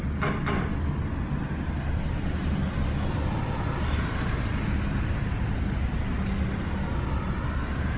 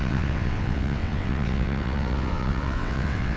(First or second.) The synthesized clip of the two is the second